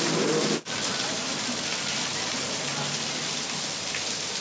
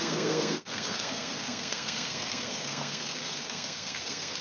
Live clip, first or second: first